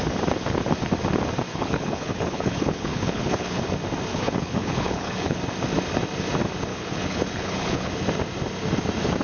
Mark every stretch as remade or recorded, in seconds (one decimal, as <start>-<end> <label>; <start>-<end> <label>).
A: 0.0-1.5 recorded; 1.5-3.6 remade; 3.6-4.1 recorded; 4.1-5.4 remade; 5.4-6.7 recorded; 6.7-7.9 remade; 7.9-9.2 recorded